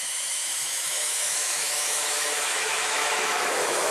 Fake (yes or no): yes